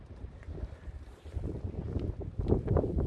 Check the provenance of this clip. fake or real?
real